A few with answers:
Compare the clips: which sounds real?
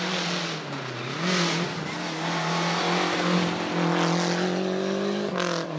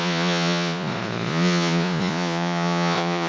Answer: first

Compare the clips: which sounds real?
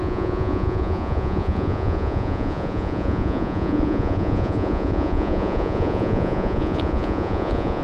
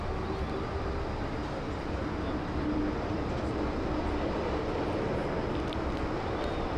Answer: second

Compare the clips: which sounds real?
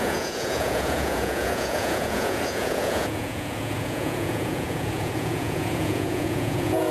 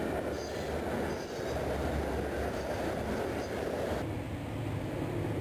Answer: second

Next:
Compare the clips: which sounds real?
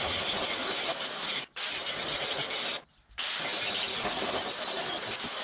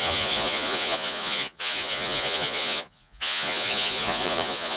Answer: first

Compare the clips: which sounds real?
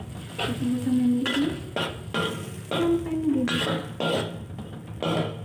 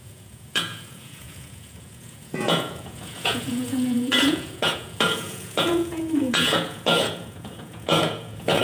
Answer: first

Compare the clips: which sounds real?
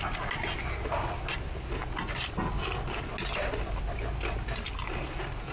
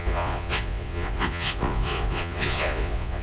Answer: first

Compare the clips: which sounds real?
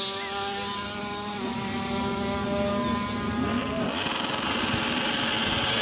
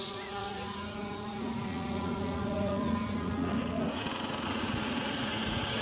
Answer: first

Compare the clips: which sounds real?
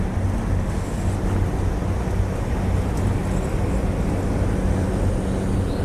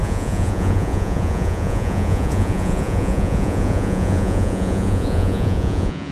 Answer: first